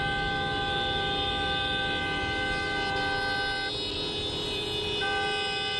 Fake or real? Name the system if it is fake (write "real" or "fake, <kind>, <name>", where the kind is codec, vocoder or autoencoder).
real